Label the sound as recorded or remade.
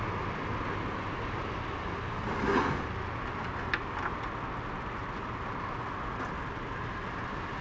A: recorded